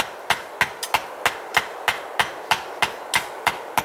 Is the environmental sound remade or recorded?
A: recorded